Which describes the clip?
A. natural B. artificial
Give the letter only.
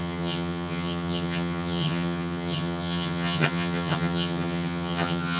B